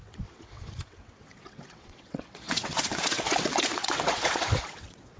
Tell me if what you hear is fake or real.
fake